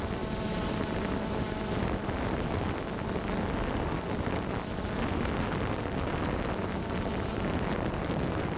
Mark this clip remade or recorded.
recorded